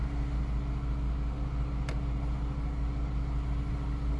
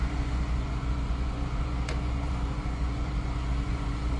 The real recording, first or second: first